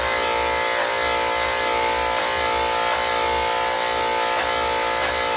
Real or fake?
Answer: real